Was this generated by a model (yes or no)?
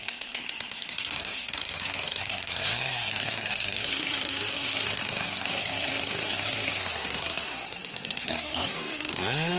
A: yes